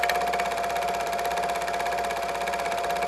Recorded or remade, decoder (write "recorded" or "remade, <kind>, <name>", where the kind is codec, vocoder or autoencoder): recorded